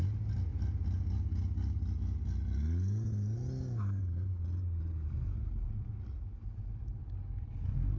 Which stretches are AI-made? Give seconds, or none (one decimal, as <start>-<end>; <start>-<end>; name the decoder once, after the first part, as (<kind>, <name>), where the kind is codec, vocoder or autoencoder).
none